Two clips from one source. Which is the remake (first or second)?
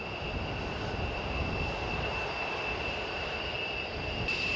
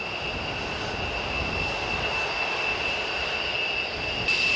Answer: first